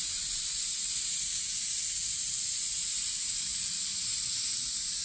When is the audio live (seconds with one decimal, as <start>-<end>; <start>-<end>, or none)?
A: 1.5-2.1